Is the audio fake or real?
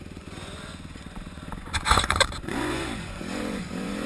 fake